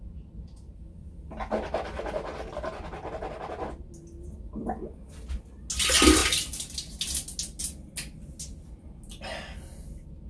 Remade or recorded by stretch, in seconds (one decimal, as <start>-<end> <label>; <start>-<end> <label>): 0.0-10.3 recorded